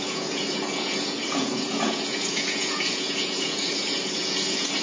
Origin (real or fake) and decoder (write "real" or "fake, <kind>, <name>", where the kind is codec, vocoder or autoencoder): fake, vocoder, Vocos